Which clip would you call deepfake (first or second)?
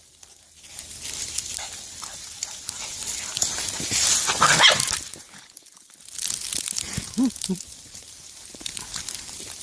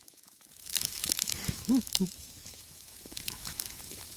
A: second